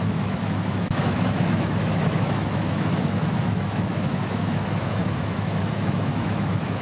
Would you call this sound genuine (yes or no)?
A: no